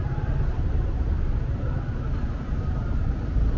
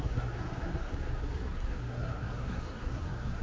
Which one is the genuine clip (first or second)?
first